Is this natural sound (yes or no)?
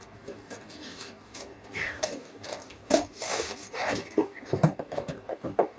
no